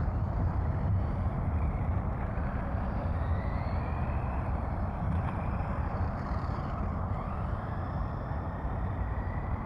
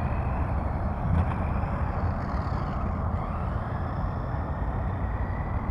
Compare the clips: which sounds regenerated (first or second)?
first